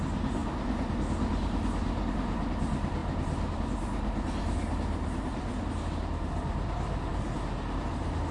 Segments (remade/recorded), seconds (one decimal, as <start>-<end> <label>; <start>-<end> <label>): 0.0-8.3 recorded